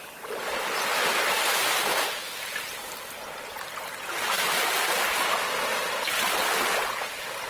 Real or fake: real